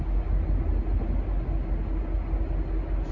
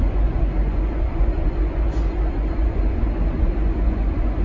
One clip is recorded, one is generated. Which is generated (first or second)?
second